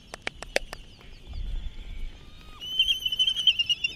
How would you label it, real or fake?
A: real